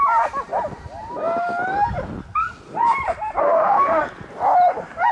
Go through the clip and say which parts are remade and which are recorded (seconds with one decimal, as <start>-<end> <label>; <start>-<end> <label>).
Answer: 0.0-3.4 recorded; 3.4-4.0 remade; 4.0-5.1 recorded